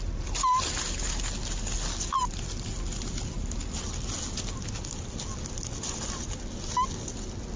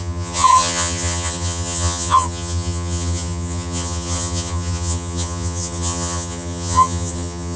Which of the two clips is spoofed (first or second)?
second